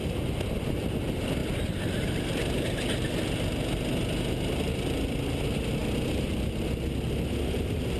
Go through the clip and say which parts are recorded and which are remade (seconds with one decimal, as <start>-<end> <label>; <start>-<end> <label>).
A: 0.0-8.0 recorded